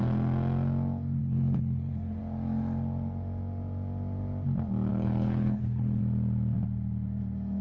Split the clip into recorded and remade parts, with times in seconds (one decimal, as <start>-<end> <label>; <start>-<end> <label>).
0.0-1.2 recorded; 1.2-2.2 remade; 2.2-4.9 recorded; 4.9-6.0 remade; 6.0-7.6 recorded